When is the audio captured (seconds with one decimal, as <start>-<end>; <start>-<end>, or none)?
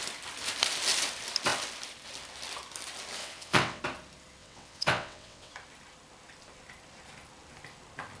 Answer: 0.0-3.2; 3.8-4.4; 5.5-8.2